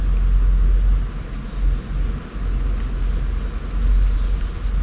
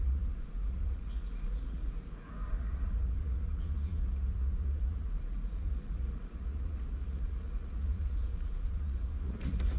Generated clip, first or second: second